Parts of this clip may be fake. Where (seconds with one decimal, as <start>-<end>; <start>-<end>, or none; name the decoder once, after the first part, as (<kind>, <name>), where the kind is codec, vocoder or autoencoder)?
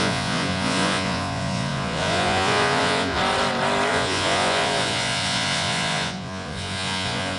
0.0-3.2 (vocoder, Vocos); 3.9-7.4